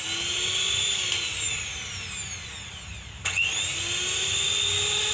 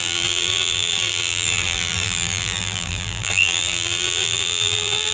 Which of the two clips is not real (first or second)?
second